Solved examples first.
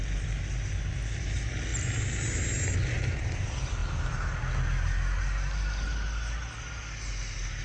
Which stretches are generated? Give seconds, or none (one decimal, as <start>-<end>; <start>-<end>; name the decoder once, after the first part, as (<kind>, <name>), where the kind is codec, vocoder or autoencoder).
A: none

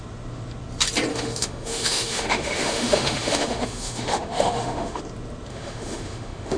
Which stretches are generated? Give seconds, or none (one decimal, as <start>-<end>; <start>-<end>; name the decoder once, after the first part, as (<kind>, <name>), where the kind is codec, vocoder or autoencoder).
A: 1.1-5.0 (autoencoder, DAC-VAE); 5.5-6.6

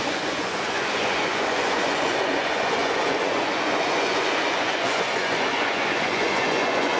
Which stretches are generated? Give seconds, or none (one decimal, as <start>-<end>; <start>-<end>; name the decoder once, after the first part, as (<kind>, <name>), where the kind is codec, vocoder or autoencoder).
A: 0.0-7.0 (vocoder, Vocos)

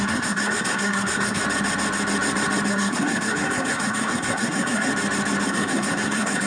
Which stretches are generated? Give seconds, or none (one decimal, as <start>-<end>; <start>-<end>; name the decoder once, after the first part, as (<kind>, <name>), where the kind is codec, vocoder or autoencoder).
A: 0.0-1.4 (codec, SNAC); 2.7-4.9; 5.5-6.5